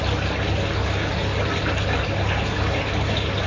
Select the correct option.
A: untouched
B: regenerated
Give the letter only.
A